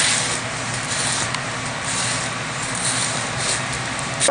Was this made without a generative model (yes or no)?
yes